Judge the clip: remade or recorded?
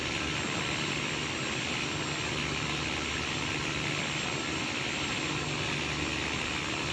recorded